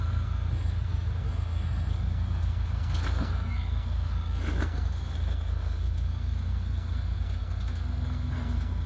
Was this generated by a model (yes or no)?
yes